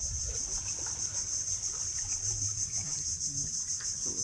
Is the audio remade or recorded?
remade